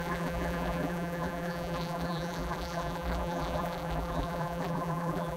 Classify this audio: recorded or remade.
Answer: remade